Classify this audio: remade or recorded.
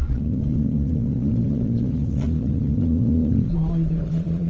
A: remade